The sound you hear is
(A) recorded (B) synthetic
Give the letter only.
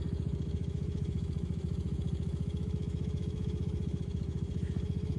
B